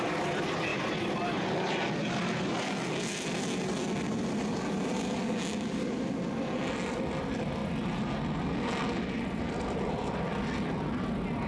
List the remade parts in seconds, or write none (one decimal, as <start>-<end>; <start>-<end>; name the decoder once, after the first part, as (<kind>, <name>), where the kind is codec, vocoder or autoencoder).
none